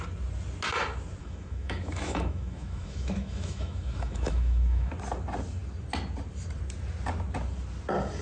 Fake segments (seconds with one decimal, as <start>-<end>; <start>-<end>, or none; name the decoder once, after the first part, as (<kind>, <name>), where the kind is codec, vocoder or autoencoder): 1.2-4.9 (autoencoder, DAC-VAE)